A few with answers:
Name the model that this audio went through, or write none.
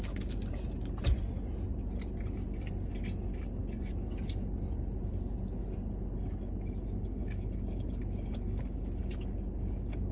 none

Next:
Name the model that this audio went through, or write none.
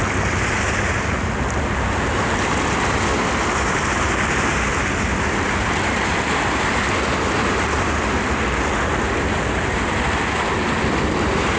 none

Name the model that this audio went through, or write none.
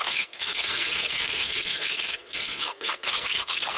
codec, SNAC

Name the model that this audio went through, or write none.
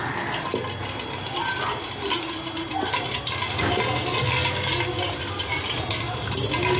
none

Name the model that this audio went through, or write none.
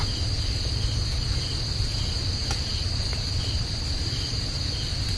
none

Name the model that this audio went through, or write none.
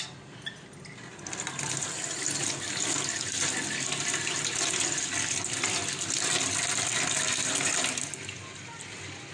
none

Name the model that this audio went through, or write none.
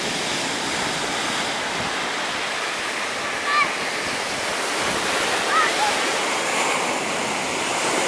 none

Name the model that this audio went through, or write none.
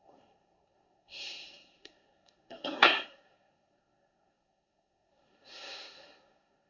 codec, SNAC